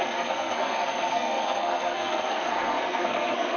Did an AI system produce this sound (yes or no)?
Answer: yes